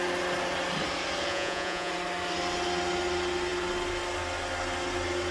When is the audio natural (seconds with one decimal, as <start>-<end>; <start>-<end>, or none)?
0.0-1.3; 1.9-5.3